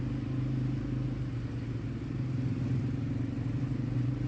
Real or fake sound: real